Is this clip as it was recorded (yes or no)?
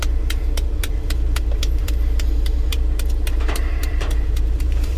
no